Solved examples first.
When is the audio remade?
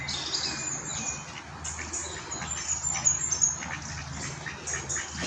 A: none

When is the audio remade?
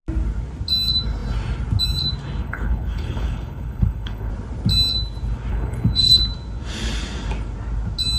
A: 2.4-4.3; 5.5-6.2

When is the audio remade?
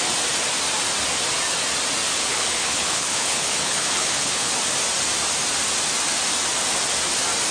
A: 2.1-4.5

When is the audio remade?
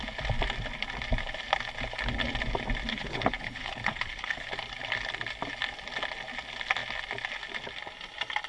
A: 2.9-4.5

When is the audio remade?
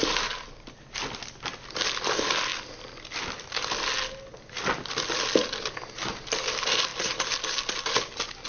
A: none